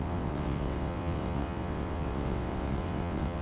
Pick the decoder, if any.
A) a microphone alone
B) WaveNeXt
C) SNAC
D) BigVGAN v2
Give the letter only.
B